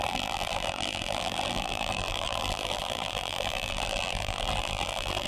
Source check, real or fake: fake